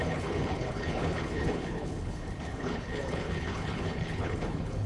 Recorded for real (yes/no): no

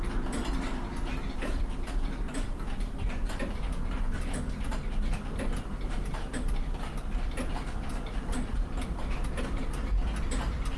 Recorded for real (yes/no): yes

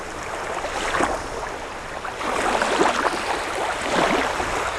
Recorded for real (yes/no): yes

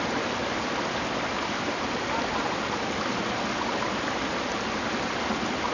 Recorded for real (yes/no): yes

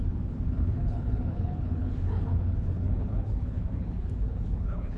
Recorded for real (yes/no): no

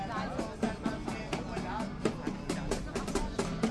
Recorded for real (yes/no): yes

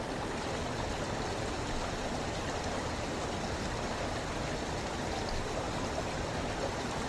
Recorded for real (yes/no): yes